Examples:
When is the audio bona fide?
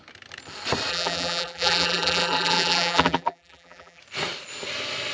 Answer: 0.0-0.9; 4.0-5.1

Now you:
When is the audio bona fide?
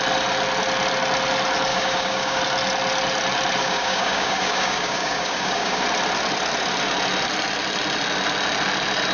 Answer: 0.0-1.7; 2.4-3.6; 5.8-9.1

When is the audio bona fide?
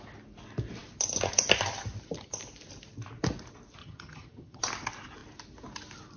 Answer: 0.0-3.8; 4.6-6.2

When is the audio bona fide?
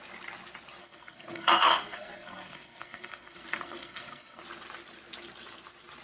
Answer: 0.0-0.8; 4.4-6.0